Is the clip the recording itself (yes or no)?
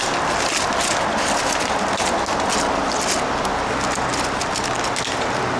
yes